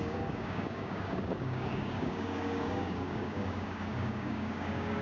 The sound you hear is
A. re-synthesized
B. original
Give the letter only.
A